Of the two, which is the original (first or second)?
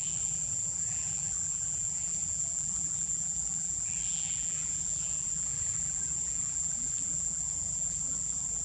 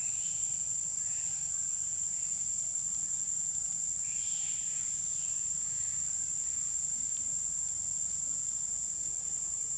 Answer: second